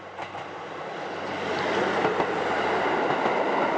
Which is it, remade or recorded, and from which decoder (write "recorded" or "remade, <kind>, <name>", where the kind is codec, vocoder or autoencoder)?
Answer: recorded